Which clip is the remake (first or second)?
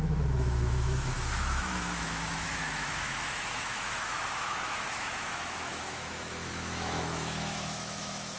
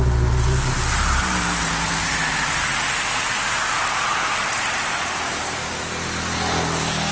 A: first